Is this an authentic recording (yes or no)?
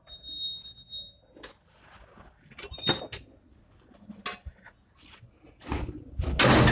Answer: yes